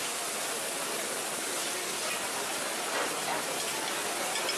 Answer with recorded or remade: recorded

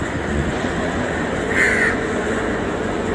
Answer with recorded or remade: remade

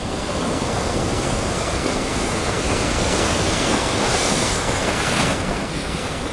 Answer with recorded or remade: remade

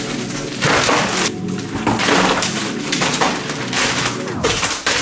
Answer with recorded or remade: recorded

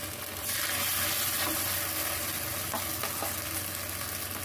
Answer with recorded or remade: recorded